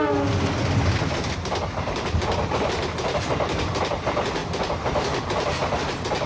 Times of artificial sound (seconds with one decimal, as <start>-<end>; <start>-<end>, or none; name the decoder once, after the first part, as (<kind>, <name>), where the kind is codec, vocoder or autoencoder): none

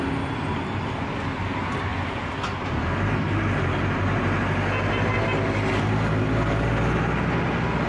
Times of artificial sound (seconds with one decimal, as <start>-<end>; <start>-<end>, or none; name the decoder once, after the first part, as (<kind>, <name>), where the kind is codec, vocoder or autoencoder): none

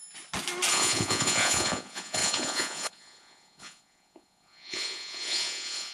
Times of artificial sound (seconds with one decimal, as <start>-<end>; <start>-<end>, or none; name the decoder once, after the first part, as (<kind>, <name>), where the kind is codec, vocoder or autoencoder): 0.7-5.9 (vocoder, Vocos)

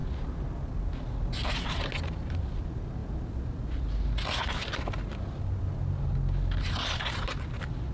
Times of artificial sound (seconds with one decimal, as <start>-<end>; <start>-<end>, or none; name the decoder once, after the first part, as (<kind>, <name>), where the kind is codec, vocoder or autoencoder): none

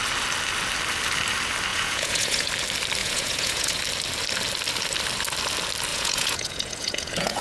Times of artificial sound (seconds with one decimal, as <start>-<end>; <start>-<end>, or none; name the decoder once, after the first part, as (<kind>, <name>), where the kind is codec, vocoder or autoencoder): 1.7-2.5 (vocoder, Vocos); 3.0-3.8; 5.9-7.4

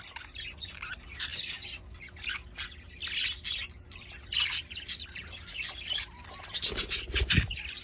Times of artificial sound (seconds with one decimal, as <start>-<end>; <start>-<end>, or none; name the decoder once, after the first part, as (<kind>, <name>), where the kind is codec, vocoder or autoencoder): none

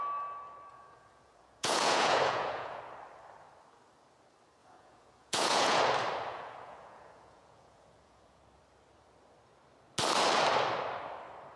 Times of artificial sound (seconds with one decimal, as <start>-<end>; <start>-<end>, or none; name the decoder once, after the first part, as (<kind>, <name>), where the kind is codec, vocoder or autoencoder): 0.7-2.8 (vocoder, Vocos); 4.6-5.8; 6.3-8.4

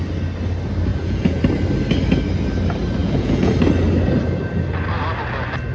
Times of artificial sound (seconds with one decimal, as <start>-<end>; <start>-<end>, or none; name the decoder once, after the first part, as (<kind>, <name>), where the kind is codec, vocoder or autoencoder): 0.9-1.4 (vocoder, Vocos); 3.0-3.5